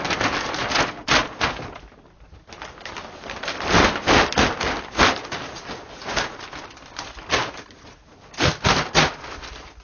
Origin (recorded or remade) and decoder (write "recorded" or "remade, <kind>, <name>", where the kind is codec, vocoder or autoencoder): recorded